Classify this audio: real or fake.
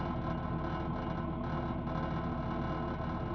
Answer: real